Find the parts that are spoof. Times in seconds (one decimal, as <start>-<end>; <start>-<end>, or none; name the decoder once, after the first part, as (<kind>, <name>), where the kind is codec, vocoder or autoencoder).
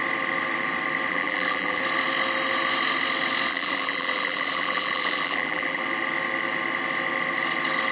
1.1-1.8 (vocoder, BigVGAN v2); 3.5-5.8